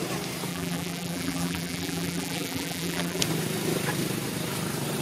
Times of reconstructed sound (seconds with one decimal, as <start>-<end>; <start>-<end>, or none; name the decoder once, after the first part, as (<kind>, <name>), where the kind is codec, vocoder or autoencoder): 0.5-3.2 (vocoder, BigVGAN v2)